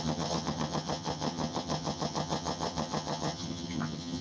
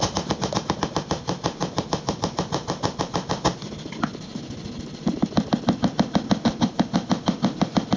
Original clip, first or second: second